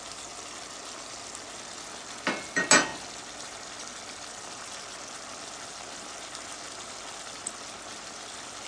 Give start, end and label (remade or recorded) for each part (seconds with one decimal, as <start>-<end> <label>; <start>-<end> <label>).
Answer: 0.0-2.9 recorded; 2.9-5.0 remade; 5.0-8.7 recorded